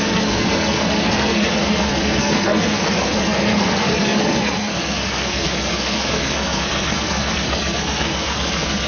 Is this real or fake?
fake